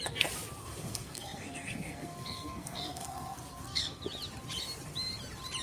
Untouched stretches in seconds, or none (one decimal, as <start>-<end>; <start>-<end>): 0.0-0.6; 4.0-5.6